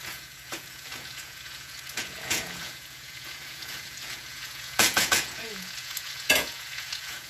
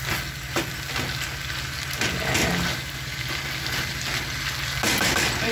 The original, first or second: second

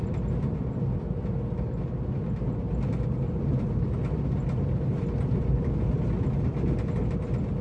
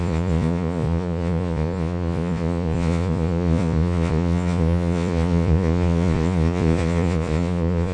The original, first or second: first